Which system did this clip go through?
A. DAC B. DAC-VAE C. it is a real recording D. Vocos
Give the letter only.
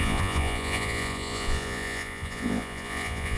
D